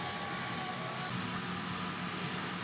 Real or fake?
real